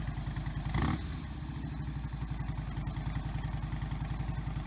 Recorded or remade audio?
recorded